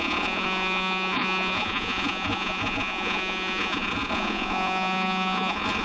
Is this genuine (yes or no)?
no